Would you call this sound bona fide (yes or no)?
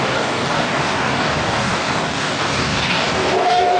no